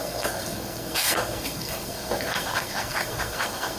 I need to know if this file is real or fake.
fake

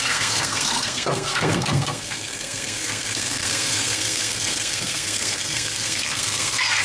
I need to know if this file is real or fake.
fake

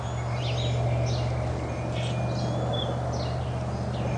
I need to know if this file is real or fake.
real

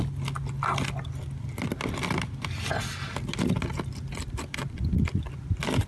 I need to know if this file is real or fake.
real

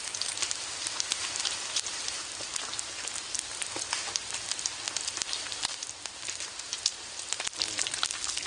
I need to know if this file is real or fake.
real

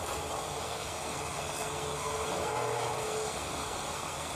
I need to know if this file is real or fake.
fake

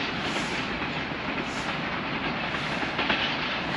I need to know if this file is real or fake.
real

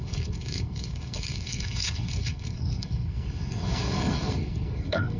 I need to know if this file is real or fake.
fake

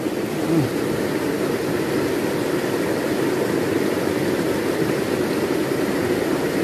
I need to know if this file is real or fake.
real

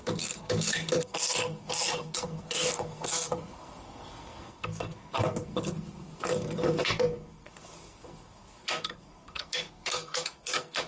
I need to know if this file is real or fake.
fake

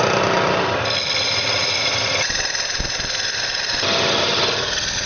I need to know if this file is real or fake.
real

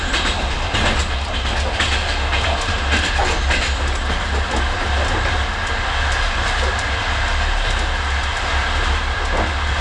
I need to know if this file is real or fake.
real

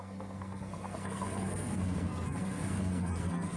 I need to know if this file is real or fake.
fake